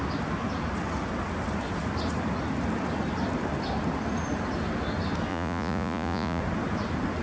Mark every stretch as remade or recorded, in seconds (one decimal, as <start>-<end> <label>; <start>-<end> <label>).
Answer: 0.0-5.3 recorded; 5.3-6.4 remade; 6.4-7.2 recorded